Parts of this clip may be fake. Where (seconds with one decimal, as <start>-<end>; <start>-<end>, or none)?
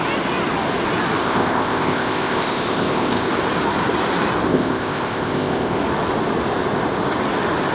1.2-3.3; 4.5-5.8